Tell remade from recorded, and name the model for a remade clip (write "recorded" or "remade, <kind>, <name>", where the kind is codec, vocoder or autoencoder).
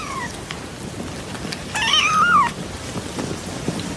recorded